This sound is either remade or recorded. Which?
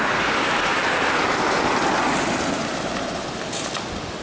recorded